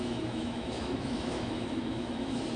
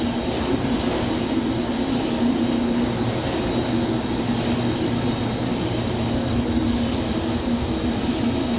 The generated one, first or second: first